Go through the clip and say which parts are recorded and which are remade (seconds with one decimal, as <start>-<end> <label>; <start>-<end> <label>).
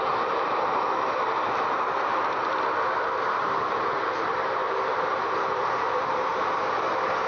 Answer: 0.0-7.3 remade